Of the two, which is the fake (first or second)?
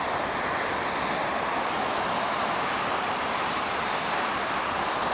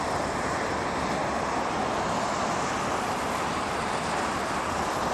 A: first